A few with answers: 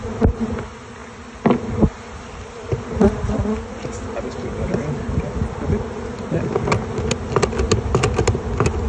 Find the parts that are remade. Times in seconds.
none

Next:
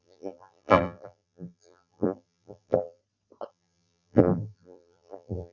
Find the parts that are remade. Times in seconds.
0.0-3.0 (vocoder, BigVGAN v2); 3.5-5.5